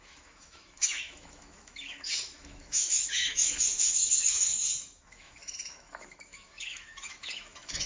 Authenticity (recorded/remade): remade